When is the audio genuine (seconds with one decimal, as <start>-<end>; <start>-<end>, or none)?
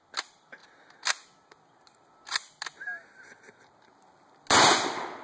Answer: 0.0-5.2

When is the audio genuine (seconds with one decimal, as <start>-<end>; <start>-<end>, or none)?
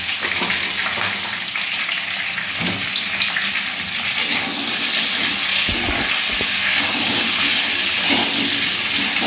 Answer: 0.0-6.7; 7.2-9.3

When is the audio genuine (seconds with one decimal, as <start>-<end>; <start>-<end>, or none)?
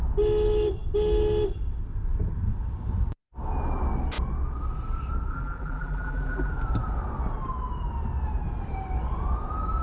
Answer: 0.0-5.3; 6.5-9.8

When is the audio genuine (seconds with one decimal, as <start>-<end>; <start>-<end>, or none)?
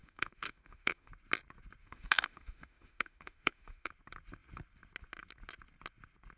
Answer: 1.1-1.8; 3.9-6.4